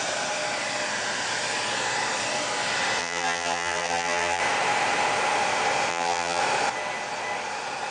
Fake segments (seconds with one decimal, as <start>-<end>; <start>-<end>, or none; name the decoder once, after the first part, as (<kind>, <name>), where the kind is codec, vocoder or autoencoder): 3.0-4.4 (vocoder, BigVGAN v2); 5.9-6.4